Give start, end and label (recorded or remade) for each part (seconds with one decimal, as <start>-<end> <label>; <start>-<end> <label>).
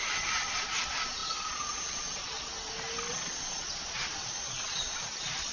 0.0-2.5 remade; 2.5-3.1 recorded; 3.1-5.5 remade